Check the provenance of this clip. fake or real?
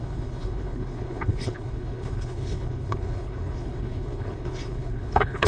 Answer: fake